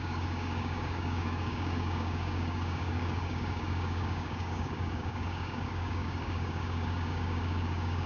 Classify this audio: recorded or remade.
remade